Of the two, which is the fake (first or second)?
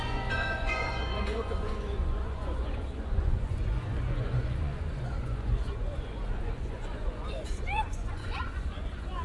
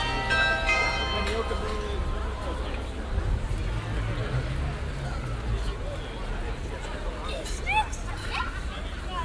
first